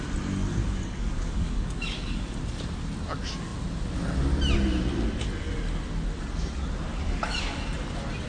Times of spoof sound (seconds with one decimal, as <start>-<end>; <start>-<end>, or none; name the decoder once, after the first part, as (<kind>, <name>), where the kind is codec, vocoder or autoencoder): 0.6-2.4 (codec, DAC); 6.9-7.6